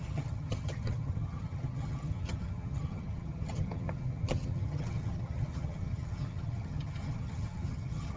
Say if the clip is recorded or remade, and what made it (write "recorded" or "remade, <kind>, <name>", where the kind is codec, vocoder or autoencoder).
remade, vocoder, HiFi-GAN